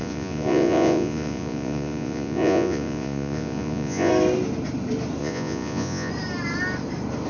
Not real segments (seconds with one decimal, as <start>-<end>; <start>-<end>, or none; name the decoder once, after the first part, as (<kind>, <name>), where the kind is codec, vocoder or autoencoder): 0.0-4.1 (vocoder, Vocos); 5.2-6.1